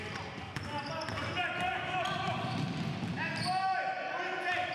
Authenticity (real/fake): real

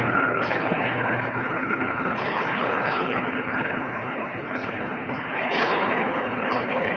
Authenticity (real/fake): fake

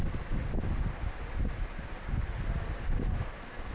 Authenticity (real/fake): real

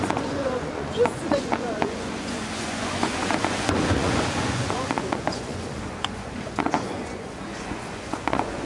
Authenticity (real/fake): fake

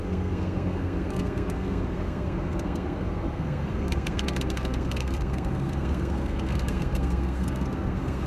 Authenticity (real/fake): fake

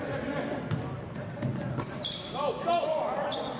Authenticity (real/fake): real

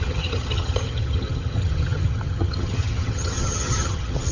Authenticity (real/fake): fake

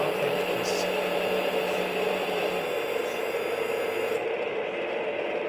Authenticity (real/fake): fake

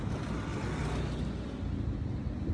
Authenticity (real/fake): real